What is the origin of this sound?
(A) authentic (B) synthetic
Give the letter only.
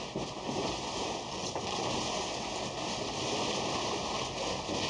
A